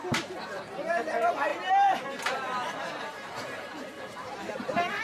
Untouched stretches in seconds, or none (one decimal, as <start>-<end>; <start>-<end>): none